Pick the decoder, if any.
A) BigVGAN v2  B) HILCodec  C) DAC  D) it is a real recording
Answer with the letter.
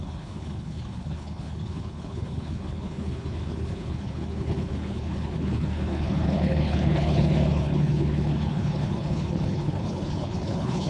B